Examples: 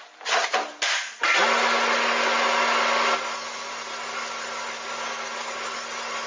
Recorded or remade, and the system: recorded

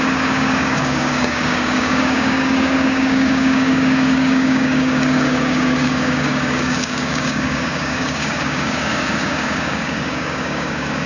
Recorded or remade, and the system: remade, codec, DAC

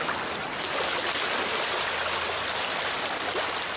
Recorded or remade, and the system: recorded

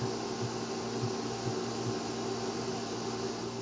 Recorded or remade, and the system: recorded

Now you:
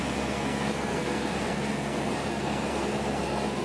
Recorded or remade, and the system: remade, codec, SNAC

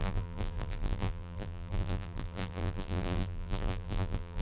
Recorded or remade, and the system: remade, vocoder, BigVGAN v2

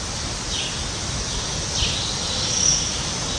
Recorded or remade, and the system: recorded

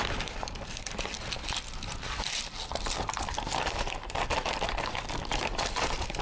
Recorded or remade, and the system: remade, vocoder, BigVGAN v2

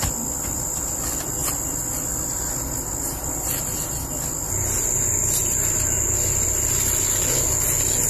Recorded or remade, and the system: recorded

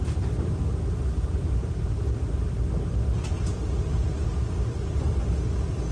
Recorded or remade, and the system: recorded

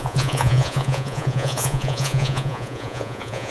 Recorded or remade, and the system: remade, vocoder, Vocos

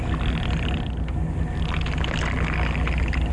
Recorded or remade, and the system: recorded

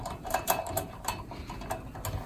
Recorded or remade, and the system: recorded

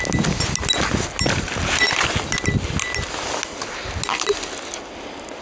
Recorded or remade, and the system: recorded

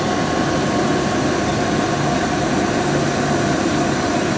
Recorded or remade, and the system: recorded